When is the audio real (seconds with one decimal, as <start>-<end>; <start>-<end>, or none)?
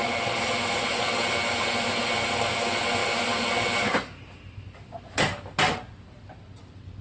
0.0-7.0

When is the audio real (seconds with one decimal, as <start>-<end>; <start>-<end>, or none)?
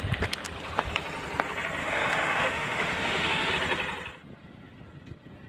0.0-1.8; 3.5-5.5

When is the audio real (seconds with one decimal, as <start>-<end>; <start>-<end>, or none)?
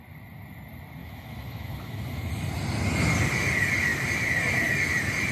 0.0-1.0; 2.5-5.3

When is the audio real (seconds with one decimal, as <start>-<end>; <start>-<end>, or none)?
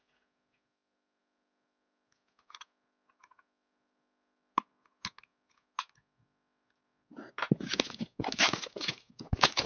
0.0-9.7